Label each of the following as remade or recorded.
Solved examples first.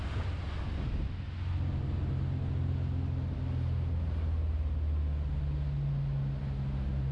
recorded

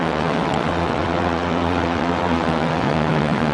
remade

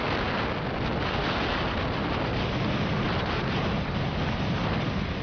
recorded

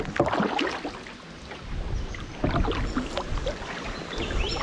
recorded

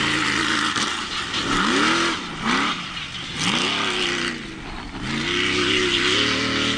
recorded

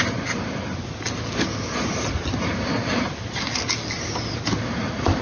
recorded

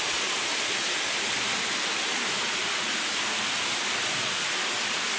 recorded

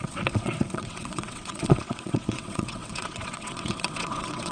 remade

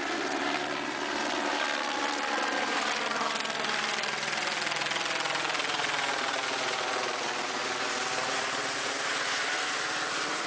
recorded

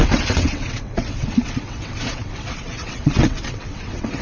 remade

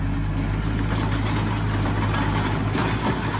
recorded